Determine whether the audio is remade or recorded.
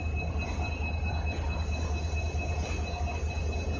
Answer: recorded